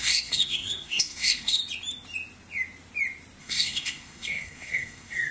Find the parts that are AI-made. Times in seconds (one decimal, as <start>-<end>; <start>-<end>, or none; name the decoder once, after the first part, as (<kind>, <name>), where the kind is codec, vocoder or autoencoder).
0.0-1.6 (codec, SNAC); 3.4-5.3